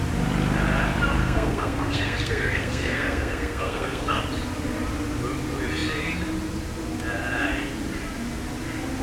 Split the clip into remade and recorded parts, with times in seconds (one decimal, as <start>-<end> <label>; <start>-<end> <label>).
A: 0.0-1.2 recorded; 1.2-4.2 remade; 4.2-9.0 recorded